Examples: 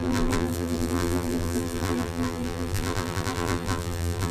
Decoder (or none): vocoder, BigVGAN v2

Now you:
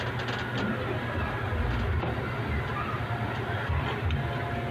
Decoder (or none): none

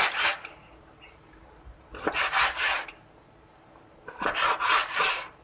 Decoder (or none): vocoder, BigVGAN v2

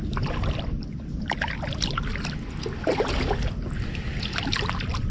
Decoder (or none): none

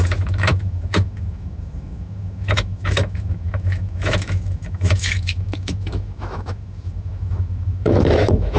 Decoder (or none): autoencoder, DAC-VAE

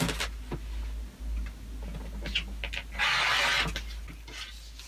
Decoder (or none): none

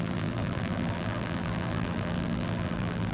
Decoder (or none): vocoder, BigVGAN v2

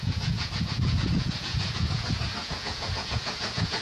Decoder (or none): vocoder, Vocos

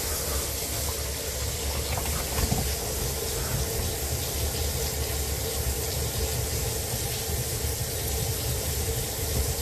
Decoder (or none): none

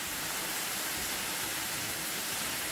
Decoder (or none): vocoder, BigVGAN v2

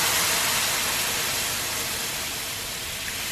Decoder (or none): none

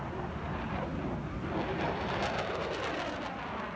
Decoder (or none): none